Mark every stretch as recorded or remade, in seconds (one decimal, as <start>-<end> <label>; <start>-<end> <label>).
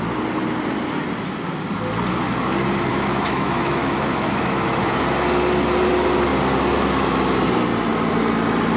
0.0-2.9 recorded; 2.9-4.8 remade; 4.8-8.8 recorded